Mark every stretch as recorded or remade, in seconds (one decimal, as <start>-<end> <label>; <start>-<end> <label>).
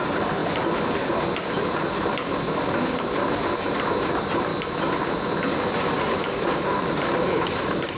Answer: 0.0-0.4 remade; 0.4-4.1 recorded; 4.1-4.5 remade; 4.5-6.5 recorded; 6.5-8.0 remade